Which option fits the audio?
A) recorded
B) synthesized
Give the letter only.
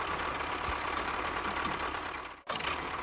B